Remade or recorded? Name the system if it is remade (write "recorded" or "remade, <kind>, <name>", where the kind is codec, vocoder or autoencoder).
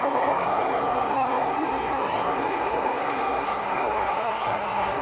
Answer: remade, codec, SNAC